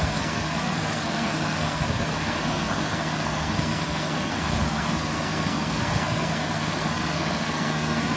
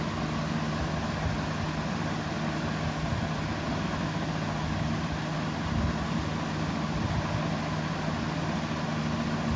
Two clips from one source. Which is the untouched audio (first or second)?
second